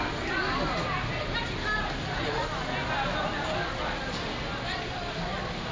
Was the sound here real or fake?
real